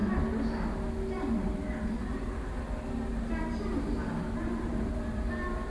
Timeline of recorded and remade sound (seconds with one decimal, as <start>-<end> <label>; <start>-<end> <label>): 0.0-3.4 recorded; 3.4-5.7 remade